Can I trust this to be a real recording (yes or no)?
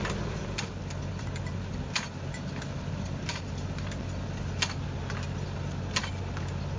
yes